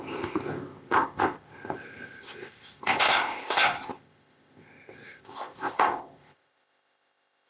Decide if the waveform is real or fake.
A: fake